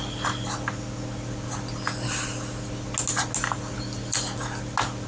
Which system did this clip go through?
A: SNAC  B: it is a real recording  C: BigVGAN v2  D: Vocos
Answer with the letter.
B